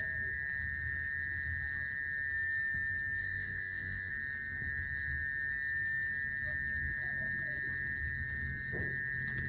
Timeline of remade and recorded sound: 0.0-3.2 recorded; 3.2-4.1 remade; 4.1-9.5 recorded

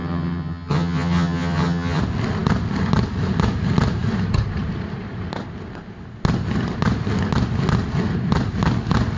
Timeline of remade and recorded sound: 0.0-2.0 remade; 2.0-9.2 recorded

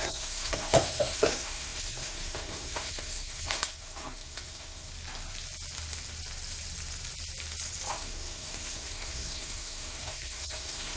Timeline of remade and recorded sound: 0.0-4.9 remade; 4.9-7.9 recorded; 7.9-11.0 remade

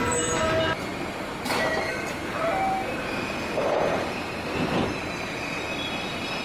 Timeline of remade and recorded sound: 0.0-6.4 remade

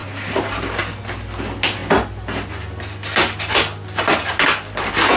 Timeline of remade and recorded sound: 0.0-0.8 remade; 0.8-5.2 recorded

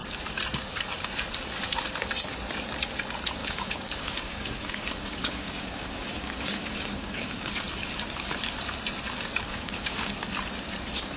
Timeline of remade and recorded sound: 0.0-3.4 recorded; 3.4-7.5 remade; 7.5-9.5 recorded; 9.5-10.1 remade; 10.1-11.2 recorded